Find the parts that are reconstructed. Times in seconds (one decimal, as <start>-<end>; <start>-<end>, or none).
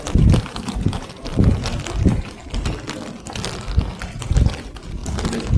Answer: 0.0-1.3; 2.0-2.4; 4.2-5.0